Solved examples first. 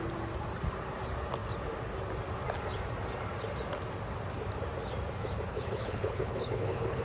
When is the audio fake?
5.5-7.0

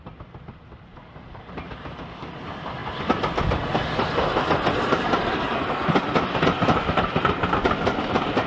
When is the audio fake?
none

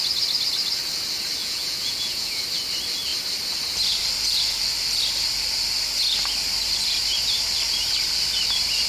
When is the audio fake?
1.4-2.4

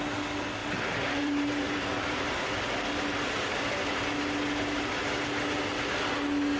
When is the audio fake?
0.6-2.6

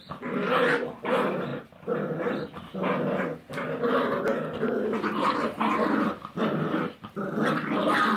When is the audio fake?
1.5-2.6; 4.3-7.2

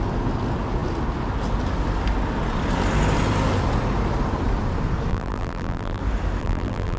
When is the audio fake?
5.1-6.0; 6.4-7.0